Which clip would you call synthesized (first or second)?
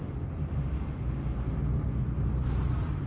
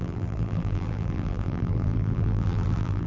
second